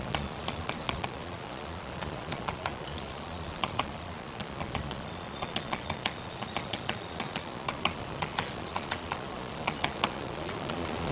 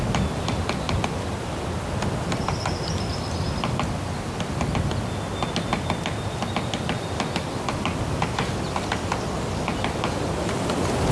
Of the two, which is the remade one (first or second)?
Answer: first